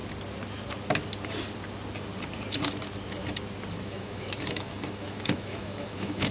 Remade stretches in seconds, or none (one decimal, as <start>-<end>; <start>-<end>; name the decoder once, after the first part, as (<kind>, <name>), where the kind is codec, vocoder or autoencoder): 3.8-6.3 (autoencoder, DAC-VAE)